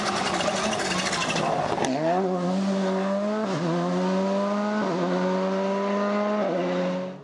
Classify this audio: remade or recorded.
recorded